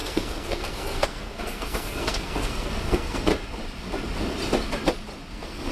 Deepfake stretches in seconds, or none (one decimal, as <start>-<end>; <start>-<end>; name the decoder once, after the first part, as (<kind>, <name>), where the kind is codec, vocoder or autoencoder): 0.0-3.3 (codec, SNAC); 5.3-5.7